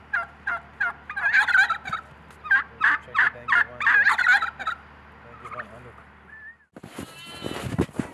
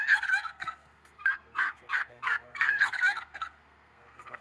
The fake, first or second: second